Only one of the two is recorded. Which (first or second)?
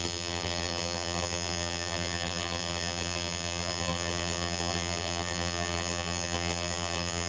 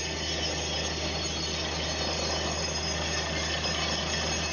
second